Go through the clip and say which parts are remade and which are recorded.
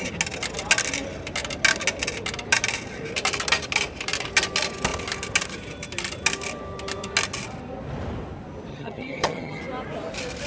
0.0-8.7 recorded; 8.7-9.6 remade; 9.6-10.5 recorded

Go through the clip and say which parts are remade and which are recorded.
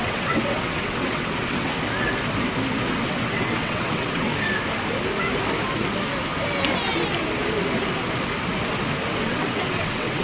0.0-1.7 remade; 1.7-2.9 recorded; 2.9-4.3 remade; 4.3-9.2 recorded; 9.2-10.2 remade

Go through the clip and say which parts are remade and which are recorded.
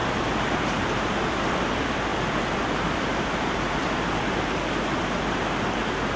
0.0-6.2 remade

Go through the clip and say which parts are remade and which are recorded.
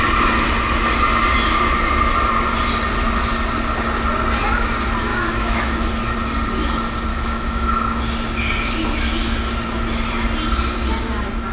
0.0-5.1 recorded; 5.1-5.9 remade; 5.9-7.1 recorded; 7.1-8.0 remade; 8.0-11.5 recorded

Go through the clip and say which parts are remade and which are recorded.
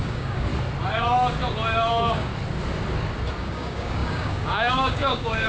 0.0-0.5 remade; 0.5-1.9 recorded; 1.9-2.3 remade; 2.3-3.4 recorded; 3.4-5.5 remade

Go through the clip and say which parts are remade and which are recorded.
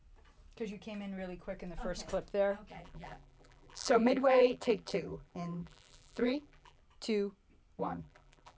0.0-2.7 recorded; 2.7-6.8 remade; 6.8-7.8 recorded; 7.8-8.6 remade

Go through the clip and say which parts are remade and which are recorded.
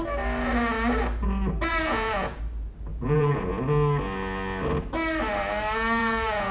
0.0-1.7 recorded; 1.7-2.4 remade; 2.4-2.9 recorded; 2.9-3.4 remade; 3.4-6.0 recorded; 6.0-6.5 remade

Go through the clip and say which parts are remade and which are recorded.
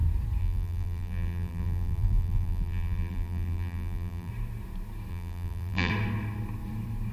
0.0-0.4 recorded; 0.4-4.3 remade; 4.3-5.1 recorded; 5.1-5.9 remade; 5.9-7.1 recorded